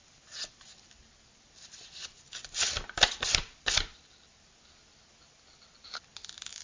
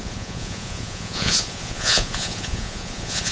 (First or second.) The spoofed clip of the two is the second